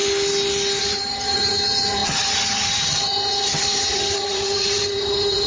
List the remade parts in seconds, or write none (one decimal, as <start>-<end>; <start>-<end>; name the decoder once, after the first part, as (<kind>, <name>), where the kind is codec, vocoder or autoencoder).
0.8-5.5 (vocoder, HiFi-GAN)